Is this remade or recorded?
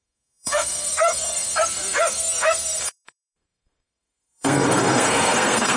remade